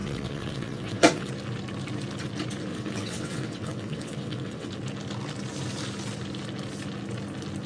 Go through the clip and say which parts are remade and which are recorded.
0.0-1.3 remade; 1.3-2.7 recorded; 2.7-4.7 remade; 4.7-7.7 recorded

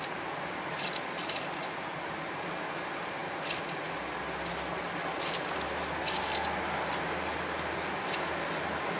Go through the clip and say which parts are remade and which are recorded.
0.0-9.0 recorded

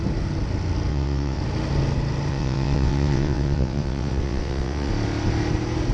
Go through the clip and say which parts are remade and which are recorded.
0.0-0.9 recorded; 0.9-1.4 remade; 1.4-2.3 recorded; 2.3-4.9 remade; 4.9-5.9 recorded

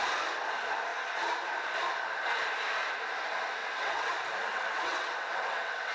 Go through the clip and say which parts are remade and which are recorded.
0.0-3.6 recorded; 3.6-4.1 remade; 4.1-4.5 recorded; 4.5-5.9 remade

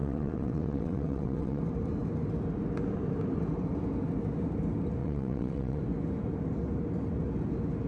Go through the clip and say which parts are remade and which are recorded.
0.0-1.6 remade; 1.6-5.0 recorded; 5.0-5.8 remade; 5.8-7.9 recorded

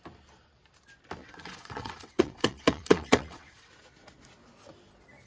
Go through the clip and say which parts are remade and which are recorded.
0.0-1.2 recorded; 1.2-3.7 remade; 3.7-5.3 recorded

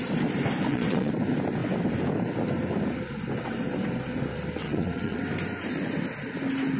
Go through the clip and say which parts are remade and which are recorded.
0.0-0.6 recorded; 0.6-1.1 remade; 1.1-4.6 recorded; 4.6-5.2 remade; 5.2-6.8 recorded